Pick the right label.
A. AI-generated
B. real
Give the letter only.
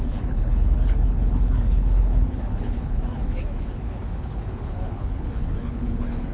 A